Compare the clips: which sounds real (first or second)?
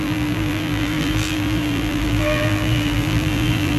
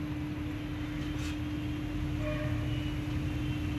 second